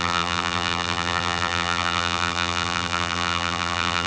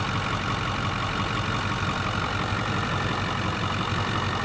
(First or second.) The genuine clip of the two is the second